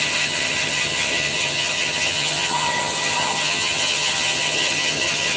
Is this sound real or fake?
fake